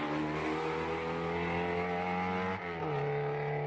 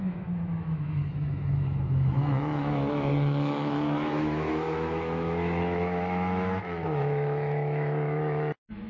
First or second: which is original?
first